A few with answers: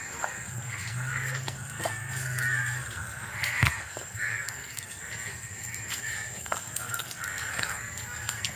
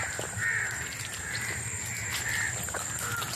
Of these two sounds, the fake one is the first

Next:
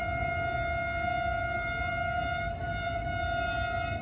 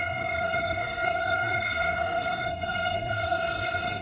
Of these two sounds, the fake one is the second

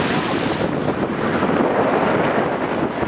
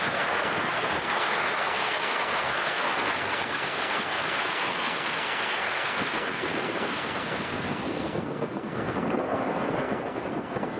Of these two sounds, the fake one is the second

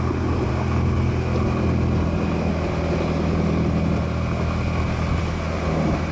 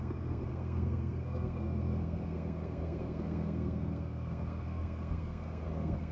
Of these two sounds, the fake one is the second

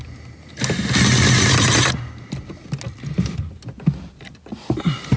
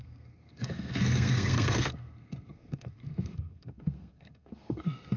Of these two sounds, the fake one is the second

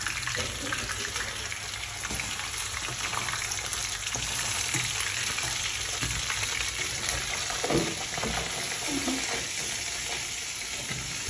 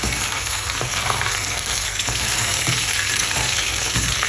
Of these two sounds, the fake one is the second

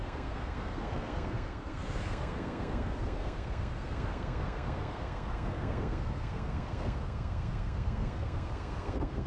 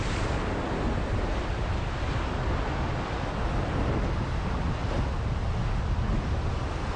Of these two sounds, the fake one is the first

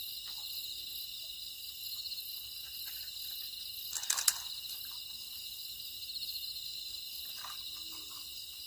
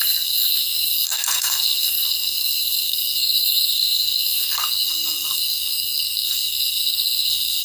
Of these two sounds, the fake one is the second